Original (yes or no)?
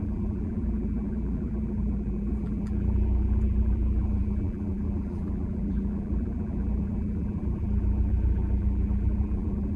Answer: no